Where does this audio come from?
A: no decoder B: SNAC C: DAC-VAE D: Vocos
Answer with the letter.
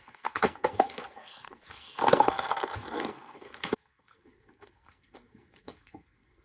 B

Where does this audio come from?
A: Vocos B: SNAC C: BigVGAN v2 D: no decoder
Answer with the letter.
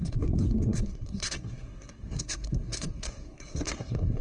B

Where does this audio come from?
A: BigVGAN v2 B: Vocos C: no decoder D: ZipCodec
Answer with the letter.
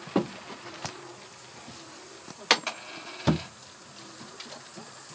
C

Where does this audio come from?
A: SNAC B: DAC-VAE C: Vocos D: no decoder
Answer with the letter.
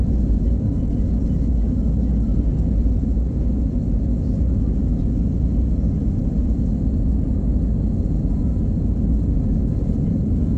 D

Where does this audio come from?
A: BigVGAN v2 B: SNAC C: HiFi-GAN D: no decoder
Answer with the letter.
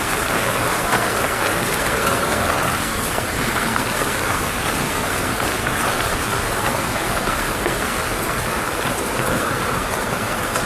B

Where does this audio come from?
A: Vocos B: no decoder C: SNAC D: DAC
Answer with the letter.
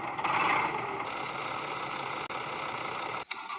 B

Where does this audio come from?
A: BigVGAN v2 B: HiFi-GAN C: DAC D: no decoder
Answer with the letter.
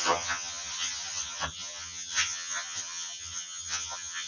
B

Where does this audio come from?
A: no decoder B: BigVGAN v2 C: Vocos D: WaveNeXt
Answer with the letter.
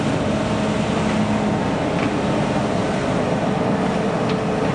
A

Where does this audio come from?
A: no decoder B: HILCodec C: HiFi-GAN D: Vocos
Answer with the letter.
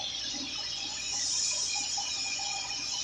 D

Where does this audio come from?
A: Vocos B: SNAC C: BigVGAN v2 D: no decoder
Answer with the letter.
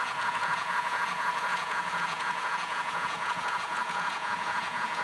A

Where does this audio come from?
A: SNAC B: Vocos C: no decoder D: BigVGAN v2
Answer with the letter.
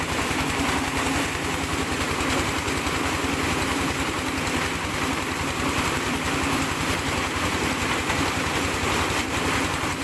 C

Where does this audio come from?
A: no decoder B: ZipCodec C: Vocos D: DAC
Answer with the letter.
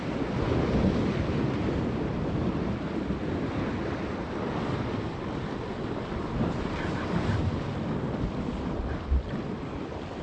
A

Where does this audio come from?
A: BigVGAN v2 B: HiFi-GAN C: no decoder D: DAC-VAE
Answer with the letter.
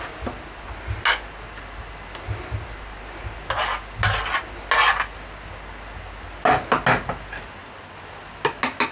C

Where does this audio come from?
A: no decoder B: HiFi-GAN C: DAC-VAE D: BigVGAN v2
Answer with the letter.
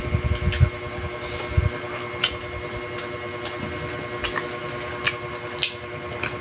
A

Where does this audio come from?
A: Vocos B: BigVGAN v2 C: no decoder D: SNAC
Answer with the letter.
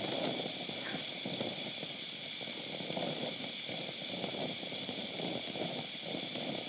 B